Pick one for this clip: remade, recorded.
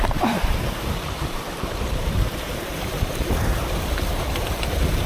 remade